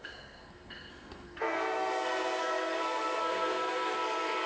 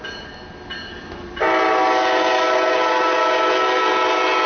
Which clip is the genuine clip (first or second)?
second